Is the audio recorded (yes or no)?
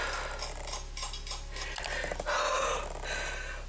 yes